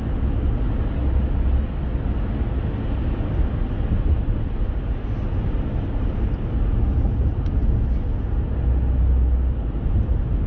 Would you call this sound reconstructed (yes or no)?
no